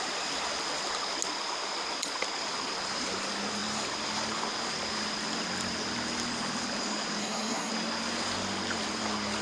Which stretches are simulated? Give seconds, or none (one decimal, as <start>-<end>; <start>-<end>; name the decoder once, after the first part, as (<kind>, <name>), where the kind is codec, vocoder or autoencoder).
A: 7.2-7.7 (codec, SNAC)